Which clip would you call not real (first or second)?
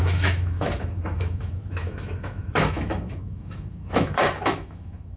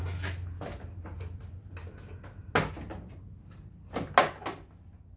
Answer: first